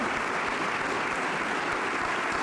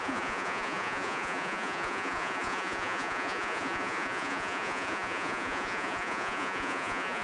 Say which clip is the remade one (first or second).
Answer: second